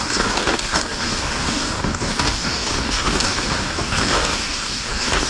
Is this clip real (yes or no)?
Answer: no